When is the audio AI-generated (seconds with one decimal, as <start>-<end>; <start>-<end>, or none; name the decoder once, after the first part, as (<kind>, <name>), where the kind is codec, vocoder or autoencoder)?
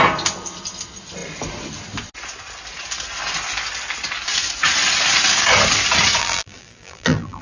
6.2-7.4 (vocoder, BigVGAN v2)